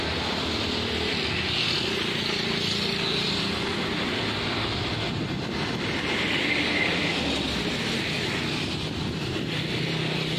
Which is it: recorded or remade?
recorded